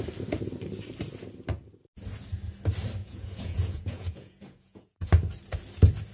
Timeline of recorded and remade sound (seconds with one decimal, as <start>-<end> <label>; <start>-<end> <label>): 0.0-3.0 recorded; 3.0-5.1 remade; 5.1-6.1 recorded